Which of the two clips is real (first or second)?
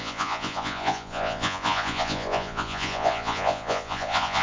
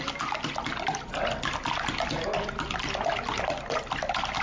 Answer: second